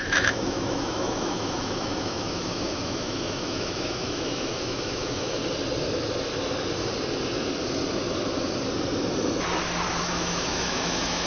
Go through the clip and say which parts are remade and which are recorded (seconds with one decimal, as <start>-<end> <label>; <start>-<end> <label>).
0.0-5.4 remade; 5.4-10.0 recorded; 10.0-11.3 remade

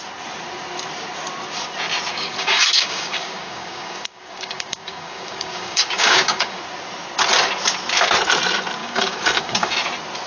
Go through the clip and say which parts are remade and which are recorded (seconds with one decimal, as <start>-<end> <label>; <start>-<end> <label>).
0.0-2.1 recorded; 2.1-6.6 remade; 6.6-8.8 recorded; 8.8-9.7 remade; 9.7-10.3 recorded

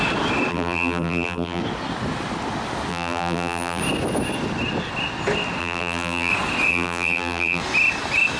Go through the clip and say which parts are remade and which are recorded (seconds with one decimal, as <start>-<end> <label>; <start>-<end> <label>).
0.0-0.5 recorded; 0.5-1.6 remade; 1.6-2.9 recorded; 2.9-3.8 remade; 3.8-5.6 recorded; 5.6-6.3 remade; 6.3-6.7 recorded; 6.7-7.6 remade; 7.6-8.4 recorded